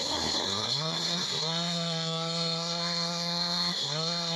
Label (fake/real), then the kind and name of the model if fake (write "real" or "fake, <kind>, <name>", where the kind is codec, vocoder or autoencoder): fake, codec, SNAC